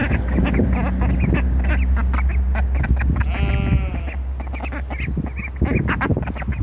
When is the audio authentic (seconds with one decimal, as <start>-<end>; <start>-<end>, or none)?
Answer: 0.0-6.6